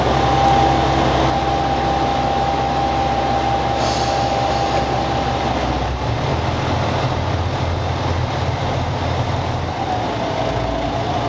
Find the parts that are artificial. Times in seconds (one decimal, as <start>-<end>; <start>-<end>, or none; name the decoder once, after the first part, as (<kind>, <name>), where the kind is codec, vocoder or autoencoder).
2.1-3.0 (autoencoder, DAC-VAE)